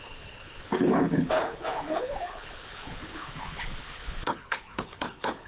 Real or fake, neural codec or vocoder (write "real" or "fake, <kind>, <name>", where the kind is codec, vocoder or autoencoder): fake, codec, HILCodec